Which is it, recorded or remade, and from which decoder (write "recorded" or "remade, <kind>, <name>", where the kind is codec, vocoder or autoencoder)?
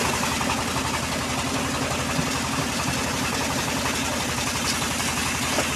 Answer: recorded